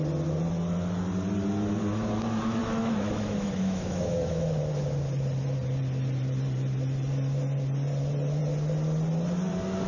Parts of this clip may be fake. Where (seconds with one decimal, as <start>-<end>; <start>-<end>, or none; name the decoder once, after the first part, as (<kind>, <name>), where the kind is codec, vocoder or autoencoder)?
2.6-4.6 (autoencoder, DAC-VAE)